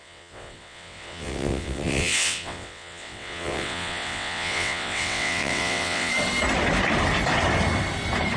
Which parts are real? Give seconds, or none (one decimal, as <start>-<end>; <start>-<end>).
6.1-8.4